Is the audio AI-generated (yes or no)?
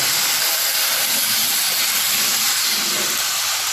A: no